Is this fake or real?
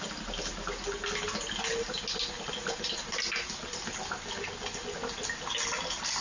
real